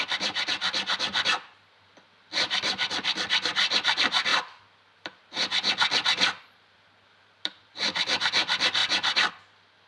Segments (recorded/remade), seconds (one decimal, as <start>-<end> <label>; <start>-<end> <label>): 0.0-1.1 remade; 1.1-1.7 recorded; 1.7-4.3 remade; 4.3-7.6 recorded; 7.6-8.8 remade; 8.8-9.3 recorded; 9.3-9.9 remade